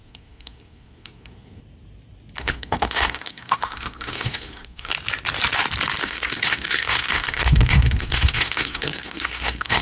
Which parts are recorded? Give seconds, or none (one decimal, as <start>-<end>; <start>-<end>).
1.6-2.4; 4.9-6.0